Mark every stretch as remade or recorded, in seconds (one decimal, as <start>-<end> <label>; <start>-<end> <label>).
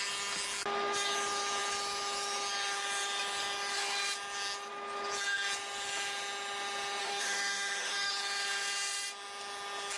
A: 0.0-7.0 recorded; 7.0-8.1 remade; 8.1-10.0 recorded